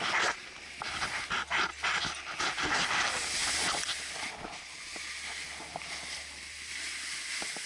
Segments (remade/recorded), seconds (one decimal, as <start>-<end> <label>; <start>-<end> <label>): 0.0-3.4 recorded; 3.4-4.3 remade; 4.3-5.7 recorded; 5.7-6.8 remade; 6.8-7.7 recorded

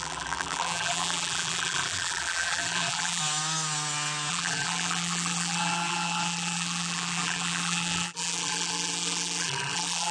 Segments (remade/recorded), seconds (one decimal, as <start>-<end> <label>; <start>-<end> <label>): 0.0-3.2 remade; 3.2-4.3 recorded; 4.3-10.1 remade